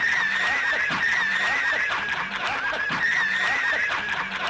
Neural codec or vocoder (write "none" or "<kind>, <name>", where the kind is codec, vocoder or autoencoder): vocoder, BigVGAN v2